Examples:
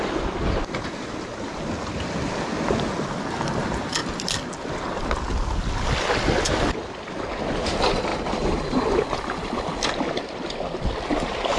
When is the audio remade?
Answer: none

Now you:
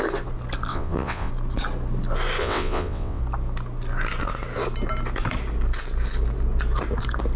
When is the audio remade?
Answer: 0.7-1.3 (vocoder, WaveNeXt); 2.4-3.2

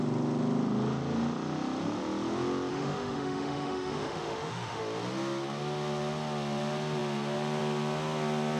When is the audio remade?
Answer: 2.7-4.8 (autoencoder, DAC-VAE)